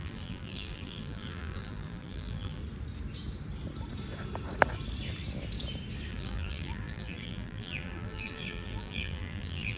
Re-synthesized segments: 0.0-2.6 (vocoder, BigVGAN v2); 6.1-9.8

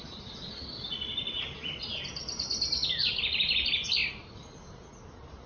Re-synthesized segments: none

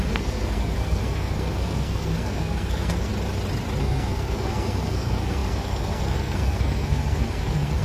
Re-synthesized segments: 0.0-3.1 (codec, SNAC); 3.8-7.8

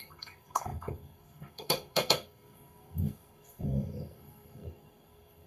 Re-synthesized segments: 0.0-5.5 (codec, SNAC)

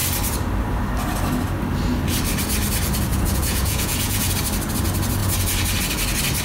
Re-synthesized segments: 3.1-4.3 (vocoder, Vocos)